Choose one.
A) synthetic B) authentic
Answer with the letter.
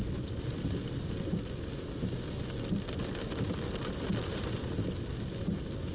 B